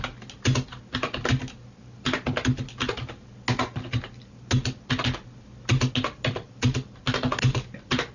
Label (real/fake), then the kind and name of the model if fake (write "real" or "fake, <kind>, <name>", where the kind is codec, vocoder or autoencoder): real